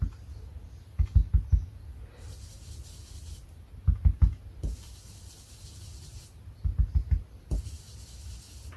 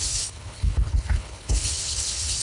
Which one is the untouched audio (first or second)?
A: first